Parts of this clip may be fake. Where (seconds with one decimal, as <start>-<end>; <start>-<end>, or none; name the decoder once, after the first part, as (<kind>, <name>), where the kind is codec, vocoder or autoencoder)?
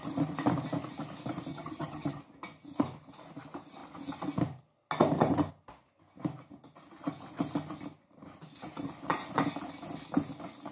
1.5-2.2 (vocoder, HiFi-GAN)